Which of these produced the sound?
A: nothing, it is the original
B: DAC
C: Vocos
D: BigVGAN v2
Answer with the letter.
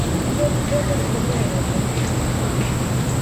A